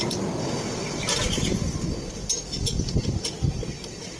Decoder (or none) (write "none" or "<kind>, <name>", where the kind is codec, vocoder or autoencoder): none